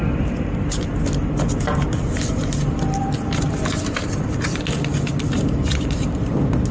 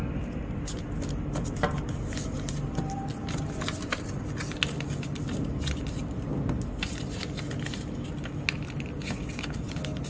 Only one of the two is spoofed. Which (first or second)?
first